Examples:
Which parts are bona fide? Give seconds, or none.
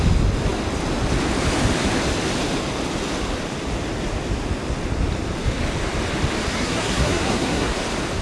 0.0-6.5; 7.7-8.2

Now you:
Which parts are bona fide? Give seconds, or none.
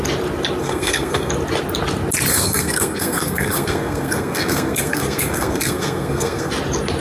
0.0-0.6; 1.3-2.3; 6.5-7.0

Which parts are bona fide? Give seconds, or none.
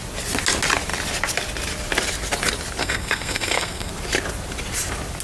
0.0-2.8; 3.9-5.2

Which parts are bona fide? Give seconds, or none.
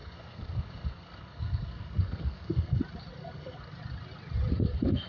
2.8-3.2; 3.7-4.5